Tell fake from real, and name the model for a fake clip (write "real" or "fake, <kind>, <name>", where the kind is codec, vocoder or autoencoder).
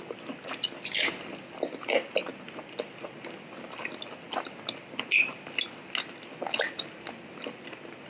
real